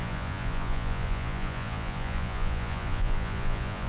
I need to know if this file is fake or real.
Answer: fake